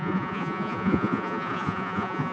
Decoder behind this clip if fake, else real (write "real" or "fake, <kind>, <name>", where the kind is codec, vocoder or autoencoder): fake, vocoder, Vocos